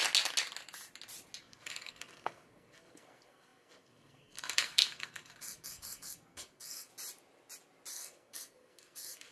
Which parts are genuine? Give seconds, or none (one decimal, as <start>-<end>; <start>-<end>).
0.0-1.4; 6.9-7.9